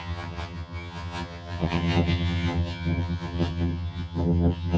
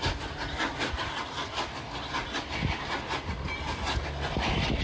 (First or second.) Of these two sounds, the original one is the second